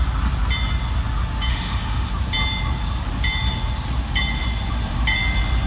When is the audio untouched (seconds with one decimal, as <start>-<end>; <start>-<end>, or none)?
0.0-1.5; 2.1-5.7